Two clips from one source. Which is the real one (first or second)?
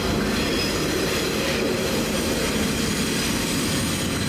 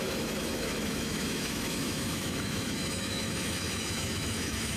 first